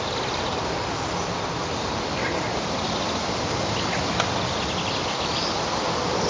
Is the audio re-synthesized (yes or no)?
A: no